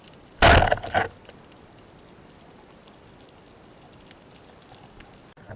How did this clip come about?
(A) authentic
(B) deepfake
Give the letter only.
A